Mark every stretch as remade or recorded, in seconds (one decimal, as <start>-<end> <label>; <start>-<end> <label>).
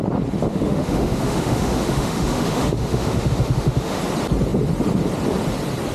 0.0-0.5 recorded; 0.5-4.0 remade; 4.0-5.9 recorded